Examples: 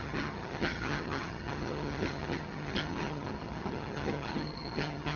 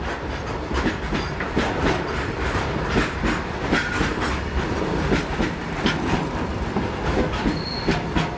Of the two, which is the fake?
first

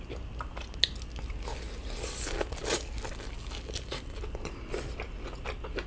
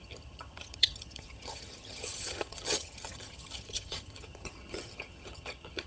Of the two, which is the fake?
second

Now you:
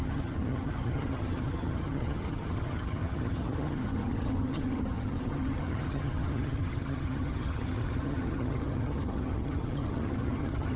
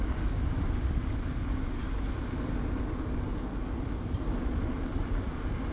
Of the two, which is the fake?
first